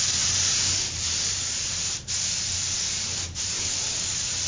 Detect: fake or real fake